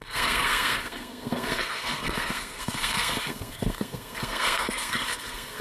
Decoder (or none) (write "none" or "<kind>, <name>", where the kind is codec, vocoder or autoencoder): codec, SNAC